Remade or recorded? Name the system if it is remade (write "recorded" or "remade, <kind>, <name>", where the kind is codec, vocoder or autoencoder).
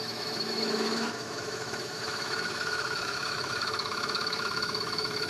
remade, autoencoder, DAC-VAE